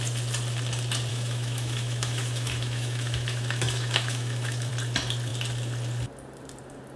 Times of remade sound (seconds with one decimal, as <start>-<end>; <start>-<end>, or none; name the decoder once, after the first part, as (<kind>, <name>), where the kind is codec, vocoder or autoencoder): 1.1-4.7 (autoencoder, DAC-VAE)